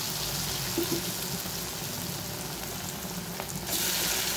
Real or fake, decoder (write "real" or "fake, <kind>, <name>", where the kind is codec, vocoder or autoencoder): real